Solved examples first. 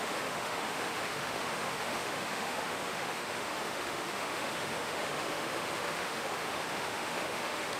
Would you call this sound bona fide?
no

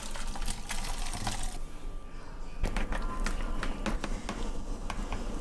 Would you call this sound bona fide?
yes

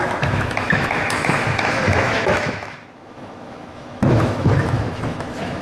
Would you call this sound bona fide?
no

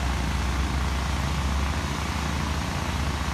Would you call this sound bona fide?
yes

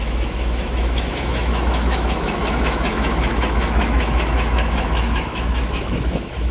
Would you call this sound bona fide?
no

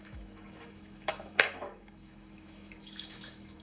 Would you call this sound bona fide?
no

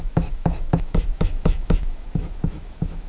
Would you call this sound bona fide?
no